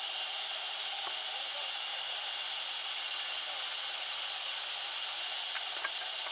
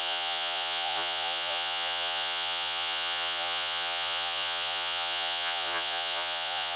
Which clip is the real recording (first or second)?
first